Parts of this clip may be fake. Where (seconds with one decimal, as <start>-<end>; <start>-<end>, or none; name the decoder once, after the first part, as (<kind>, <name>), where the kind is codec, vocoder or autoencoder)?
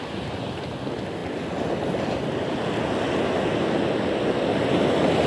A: none